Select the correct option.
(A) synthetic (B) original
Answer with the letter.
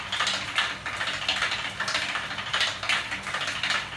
B